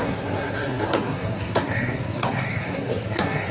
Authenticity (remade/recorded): remade